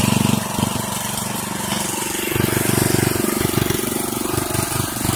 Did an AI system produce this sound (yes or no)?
no